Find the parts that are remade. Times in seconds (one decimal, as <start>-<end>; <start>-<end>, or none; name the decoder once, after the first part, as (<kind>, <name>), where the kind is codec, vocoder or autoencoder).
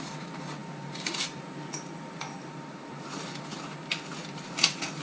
0.6-3.6 (vocoder, BigVGAN v2)